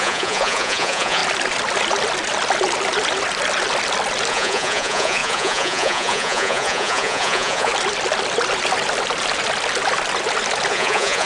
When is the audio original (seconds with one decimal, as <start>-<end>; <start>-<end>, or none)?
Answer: 1.2-4.3; 7.7-10.7